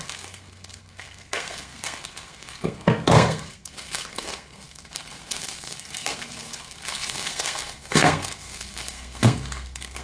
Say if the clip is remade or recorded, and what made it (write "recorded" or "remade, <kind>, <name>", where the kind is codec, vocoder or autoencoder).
remade, codec, SNAC